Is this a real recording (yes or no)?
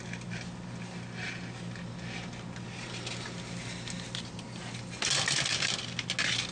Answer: yes